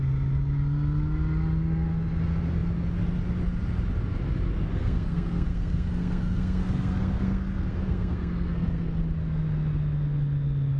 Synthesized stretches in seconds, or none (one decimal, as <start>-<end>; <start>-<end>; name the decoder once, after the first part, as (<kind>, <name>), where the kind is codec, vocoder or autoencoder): 4.7-9.0 (codec, SNAC)